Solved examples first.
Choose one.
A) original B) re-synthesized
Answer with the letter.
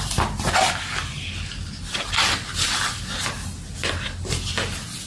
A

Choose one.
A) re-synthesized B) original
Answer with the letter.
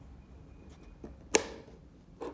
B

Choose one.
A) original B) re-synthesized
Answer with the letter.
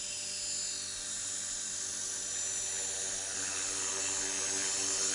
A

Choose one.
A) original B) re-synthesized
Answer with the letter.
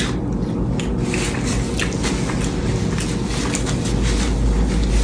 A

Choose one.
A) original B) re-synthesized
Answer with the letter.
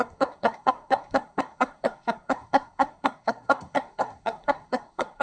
B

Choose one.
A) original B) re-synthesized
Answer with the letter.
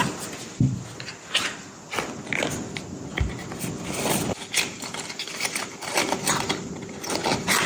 A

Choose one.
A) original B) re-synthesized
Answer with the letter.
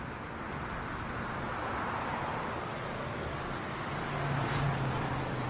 A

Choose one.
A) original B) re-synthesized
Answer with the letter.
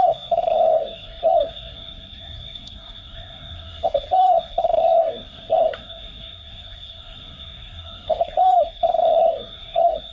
B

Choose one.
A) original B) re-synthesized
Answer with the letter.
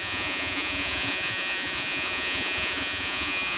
B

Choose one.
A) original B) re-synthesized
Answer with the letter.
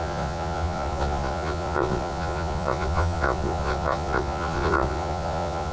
B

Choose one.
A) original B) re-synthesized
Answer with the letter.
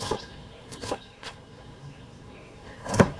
B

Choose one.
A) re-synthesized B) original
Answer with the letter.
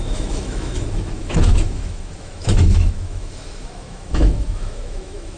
A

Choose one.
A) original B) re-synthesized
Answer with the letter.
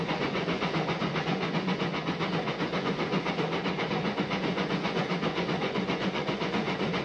B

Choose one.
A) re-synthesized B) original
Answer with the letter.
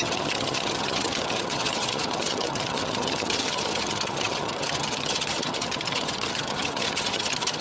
A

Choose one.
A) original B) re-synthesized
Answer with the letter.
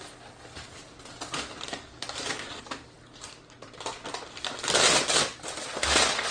A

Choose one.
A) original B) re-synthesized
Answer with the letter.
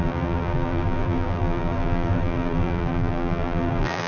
B